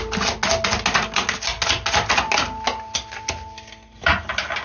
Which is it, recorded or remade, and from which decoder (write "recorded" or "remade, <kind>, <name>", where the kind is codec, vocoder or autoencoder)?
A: recorded